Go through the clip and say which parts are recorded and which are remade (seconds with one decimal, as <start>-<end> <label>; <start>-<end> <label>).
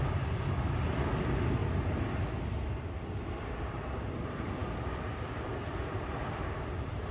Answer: 0.0-7.1 recorded